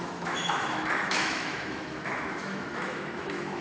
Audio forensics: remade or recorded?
remade